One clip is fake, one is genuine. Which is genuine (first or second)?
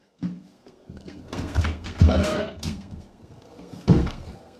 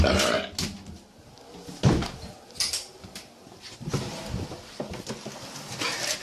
second